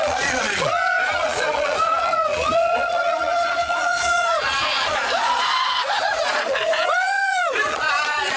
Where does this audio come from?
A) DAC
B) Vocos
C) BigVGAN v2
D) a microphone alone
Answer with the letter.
B